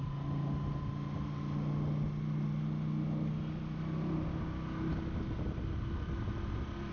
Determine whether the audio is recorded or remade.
recorded